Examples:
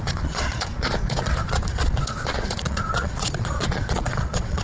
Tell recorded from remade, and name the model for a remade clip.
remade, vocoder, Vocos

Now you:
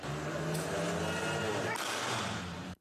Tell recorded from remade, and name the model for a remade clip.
recorded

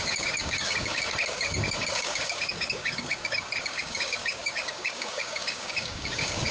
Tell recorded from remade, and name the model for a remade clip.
remade, codec, DAC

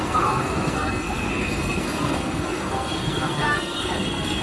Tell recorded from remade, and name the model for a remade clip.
remade, codec, SNAC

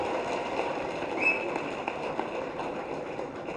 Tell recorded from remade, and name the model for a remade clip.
recorded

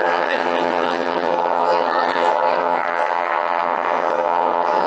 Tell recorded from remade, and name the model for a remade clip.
remade, vocoder, HiFi-GAN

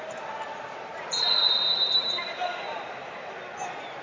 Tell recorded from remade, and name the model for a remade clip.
recorded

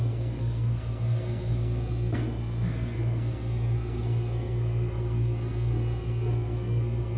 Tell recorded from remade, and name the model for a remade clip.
remade, codec, SNAC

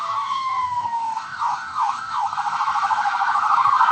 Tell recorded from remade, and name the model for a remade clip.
remade, codec, DAC